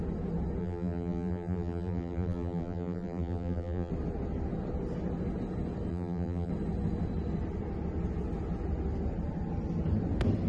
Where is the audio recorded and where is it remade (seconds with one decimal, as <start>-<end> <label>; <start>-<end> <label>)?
0.0-0.6 recorded; 0.6-3.9 remade; 3.9-5.9 recorded; 5.9-6.5 remade; 6.5-10.5 recorded